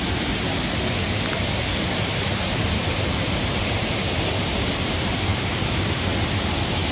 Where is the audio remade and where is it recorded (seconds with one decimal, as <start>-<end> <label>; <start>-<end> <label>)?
0.0-2.3 recorded; 2.3-4.2 remade; 4.2-6.9 recorded